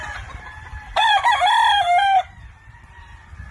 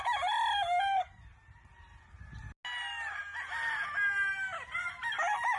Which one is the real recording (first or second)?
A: second